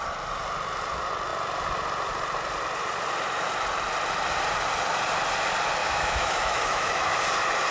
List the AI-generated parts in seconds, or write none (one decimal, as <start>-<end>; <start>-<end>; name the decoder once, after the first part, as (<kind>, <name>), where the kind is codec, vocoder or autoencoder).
5.8-7.2 (autoencoder, DAC-VAE)